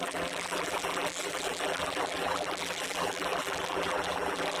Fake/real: fake